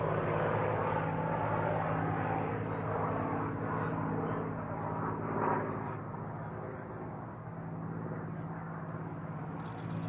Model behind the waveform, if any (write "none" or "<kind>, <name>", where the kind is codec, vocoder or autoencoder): none